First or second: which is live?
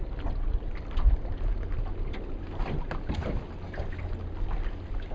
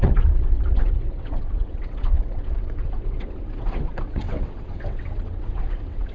first